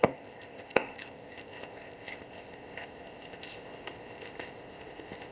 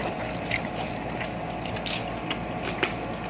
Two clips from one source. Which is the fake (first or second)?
first